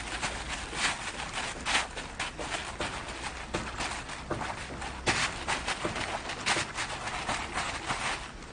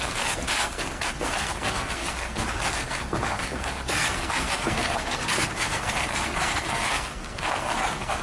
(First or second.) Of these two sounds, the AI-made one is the second